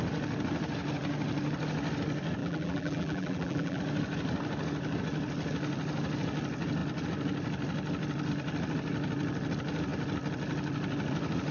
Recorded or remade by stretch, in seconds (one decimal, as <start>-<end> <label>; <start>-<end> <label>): 0.0-2.4 recorded; 2.4-3.8 remade; 3.8-11.5 recorded